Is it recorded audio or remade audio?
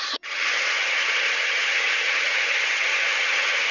remade